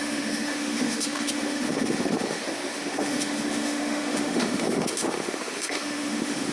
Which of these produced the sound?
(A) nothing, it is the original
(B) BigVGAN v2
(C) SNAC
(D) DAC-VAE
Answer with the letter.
D